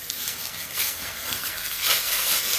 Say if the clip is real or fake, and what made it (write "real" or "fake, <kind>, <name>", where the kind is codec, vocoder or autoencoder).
fake, codec, SNAC